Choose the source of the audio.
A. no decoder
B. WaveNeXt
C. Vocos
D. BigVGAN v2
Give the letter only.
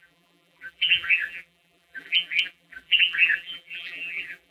D